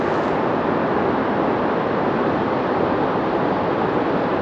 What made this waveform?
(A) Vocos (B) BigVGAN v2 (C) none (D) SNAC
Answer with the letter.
C